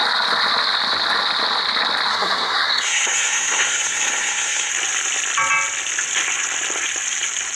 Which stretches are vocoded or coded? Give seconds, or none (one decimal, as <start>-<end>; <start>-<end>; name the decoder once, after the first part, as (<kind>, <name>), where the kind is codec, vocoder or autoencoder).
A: 2.1-4.7 (codec, SNAC)